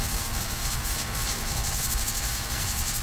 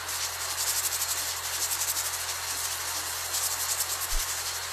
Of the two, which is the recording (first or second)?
second